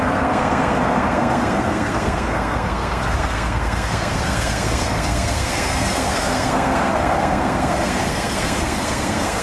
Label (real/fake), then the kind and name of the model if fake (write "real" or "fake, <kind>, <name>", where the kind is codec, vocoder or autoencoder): fake, codec, SNAC